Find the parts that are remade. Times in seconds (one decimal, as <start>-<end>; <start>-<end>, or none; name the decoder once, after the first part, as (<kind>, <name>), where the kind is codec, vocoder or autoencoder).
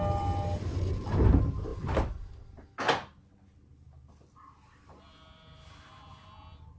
none